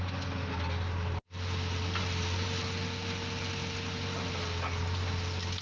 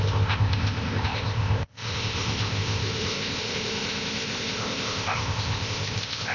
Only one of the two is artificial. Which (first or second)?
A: second